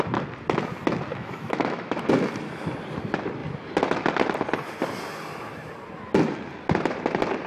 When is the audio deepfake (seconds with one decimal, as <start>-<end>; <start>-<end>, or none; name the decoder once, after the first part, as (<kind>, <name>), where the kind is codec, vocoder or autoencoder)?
1.1-2.1 (autoencoder, DAC-VAE)